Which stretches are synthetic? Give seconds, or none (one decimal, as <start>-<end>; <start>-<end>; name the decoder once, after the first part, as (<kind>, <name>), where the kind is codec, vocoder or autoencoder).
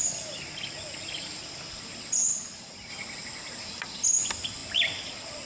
none